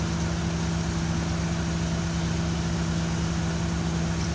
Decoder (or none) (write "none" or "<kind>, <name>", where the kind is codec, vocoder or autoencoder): none